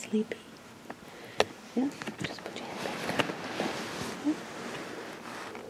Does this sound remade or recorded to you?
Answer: recorded